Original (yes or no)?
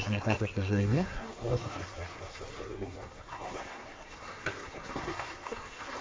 no